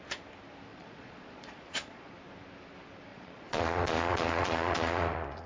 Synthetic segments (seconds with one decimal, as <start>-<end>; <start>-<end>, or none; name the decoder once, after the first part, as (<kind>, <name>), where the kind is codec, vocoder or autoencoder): 0.7-2.1 (vocoder, Vocos); 3.1-5.5